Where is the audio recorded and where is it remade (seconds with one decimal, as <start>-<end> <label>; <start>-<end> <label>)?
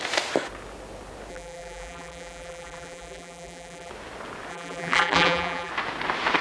0.0-1.3 recorded; 1.3-3.9 remade; 3.9-4.5 recorded; 4.5-5.7 remade; 5.7-6.4 recorded